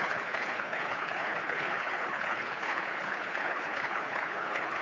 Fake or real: fake